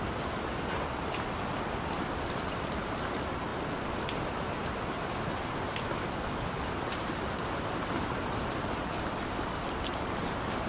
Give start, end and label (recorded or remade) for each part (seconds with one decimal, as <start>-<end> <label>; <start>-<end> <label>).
0.0-10.7 recorded